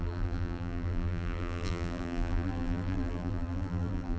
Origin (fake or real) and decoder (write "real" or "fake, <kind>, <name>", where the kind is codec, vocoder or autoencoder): fake, vocoder, BigVGAN v2